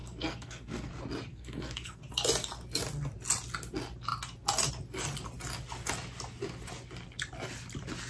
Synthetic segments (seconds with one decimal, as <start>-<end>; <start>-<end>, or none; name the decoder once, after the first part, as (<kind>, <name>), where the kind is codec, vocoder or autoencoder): 0.0-0.9 (codec, SNAC); 1.3-2.0